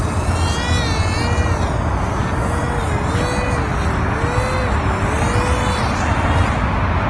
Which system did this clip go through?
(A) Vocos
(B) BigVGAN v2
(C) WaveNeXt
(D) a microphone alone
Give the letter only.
D